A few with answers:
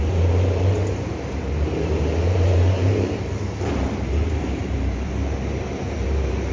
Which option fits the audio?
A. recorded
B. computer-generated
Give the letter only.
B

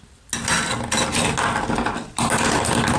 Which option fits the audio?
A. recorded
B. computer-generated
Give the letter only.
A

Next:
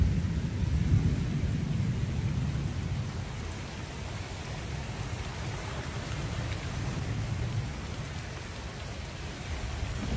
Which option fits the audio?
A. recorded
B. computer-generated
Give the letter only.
A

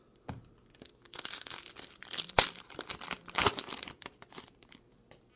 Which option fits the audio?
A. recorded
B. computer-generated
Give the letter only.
B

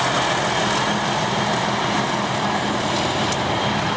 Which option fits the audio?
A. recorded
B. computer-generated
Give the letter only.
A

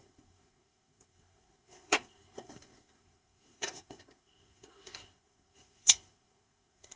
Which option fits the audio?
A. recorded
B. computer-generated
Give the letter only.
B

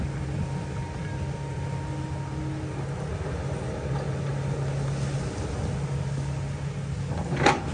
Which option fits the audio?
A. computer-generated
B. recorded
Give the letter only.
B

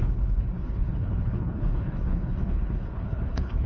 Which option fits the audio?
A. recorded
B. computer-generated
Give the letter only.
B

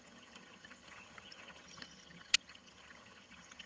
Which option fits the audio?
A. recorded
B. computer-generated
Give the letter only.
B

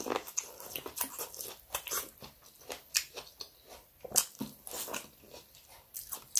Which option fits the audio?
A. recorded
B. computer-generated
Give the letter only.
A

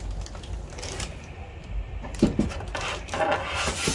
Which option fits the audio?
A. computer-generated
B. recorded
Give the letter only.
B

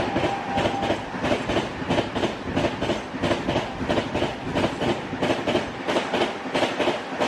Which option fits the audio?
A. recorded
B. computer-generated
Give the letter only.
A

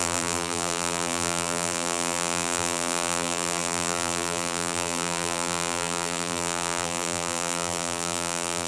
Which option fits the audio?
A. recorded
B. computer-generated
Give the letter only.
B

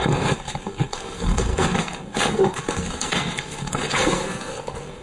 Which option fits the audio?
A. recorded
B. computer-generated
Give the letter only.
B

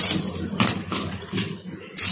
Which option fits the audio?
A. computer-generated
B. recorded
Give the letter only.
B